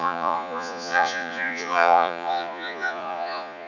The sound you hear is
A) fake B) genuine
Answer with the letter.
A